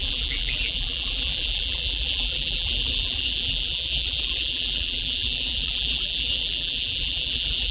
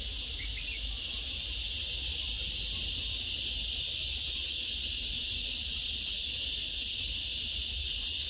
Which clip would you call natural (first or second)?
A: second